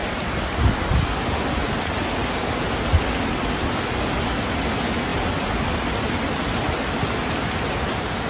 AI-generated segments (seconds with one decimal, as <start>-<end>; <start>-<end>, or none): none